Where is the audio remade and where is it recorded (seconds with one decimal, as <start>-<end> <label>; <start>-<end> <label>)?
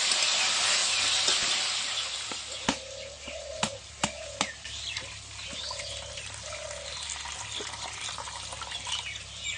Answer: 0.0-9.6 recorded